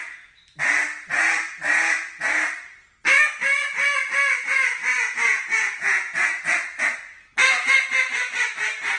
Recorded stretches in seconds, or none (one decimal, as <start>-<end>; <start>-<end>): 0.0-4.8; 6.4-9.0